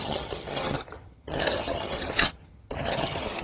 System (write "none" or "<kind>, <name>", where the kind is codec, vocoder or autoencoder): vocoder, HiFi-GAN